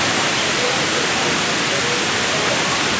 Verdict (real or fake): real